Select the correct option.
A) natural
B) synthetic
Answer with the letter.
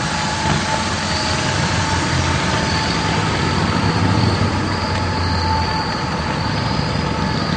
A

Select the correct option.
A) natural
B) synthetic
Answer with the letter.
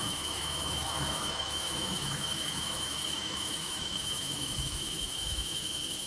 B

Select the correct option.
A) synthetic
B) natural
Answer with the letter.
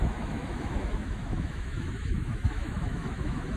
A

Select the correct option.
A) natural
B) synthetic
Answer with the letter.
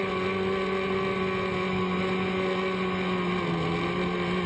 A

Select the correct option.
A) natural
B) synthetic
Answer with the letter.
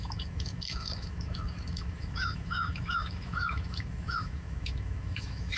B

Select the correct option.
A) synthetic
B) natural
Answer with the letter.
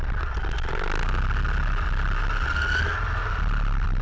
B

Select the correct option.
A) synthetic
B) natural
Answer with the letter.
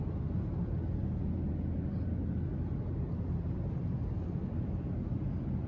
B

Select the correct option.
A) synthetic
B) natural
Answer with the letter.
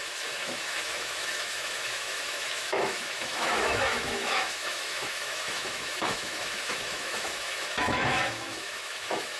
A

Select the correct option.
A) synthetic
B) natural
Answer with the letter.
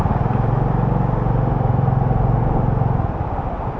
B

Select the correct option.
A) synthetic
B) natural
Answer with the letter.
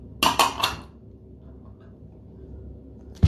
B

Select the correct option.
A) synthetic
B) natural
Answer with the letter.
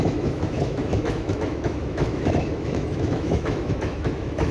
A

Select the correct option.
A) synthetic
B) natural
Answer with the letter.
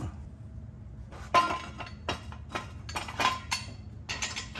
B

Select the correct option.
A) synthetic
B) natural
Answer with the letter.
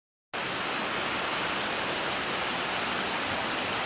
B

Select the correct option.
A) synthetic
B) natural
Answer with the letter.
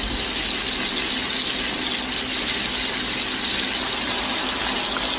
B